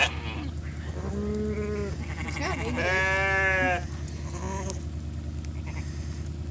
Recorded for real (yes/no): yes